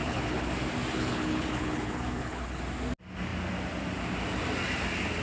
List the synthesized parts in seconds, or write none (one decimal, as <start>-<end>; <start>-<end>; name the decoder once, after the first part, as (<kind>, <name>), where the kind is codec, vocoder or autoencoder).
0.0-0.5 (codec, HILCodec); 0.9-2.6